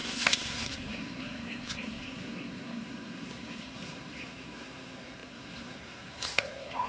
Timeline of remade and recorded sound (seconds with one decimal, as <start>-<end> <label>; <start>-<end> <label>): 0.0-6.9 remade

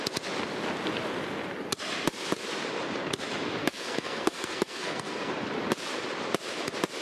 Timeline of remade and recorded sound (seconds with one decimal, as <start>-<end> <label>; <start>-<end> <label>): 0.0-3.6 recorded; 3.6-5.3 remade; 5.3-7.0 recorded

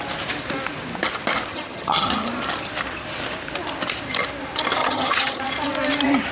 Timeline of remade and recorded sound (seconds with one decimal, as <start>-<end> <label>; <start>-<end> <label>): 0.0-1.5 recorded; 1.5-2.3 remade; 2.3-4.8 recorded; 4.8-5.4 remade; 5.4-6.3 recorded

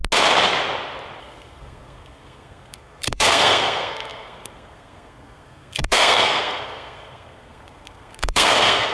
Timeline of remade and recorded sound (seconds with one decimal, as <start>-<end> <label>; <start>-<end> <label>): 0.0-1.2 recorded; 1.2-8.9 remade

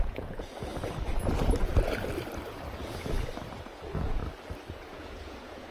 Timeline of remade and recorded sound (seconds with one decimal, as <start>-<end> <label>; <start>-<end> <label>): 0.0-0.7 remade; 0.7-3.6 recorded; 3.6-4.2 remade; 4.2-4.7 recorded; 4.7-5.7 remade

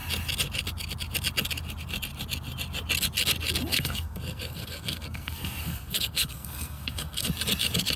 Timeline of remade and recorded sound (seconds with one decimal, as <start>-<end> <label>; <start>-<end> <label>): 0.0-3.7 recorded; 3.7-7.3 remade; 7.3-8.0 recorded